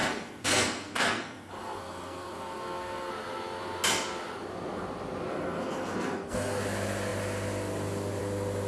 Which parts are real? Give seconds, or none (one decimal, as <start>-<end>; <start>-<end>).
3.1-5.3; 6.6-8.7